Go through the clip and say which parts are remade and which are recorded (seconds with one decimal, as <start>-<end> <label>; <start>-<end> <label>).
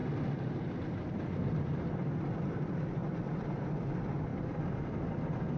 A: 0.0-1.0 recorded; 1.0-4.3 remade; 4.3-4.9 recorded; 4.9-5.6 remade